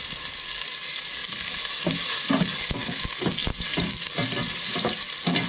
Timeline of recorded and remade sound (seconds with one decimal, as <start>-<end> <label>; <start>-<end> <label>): 0.0-1.2 recorded; 1.2-2.4 remade; 2.4-5.5 recorded